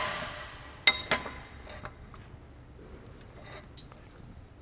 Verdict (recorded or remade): recorded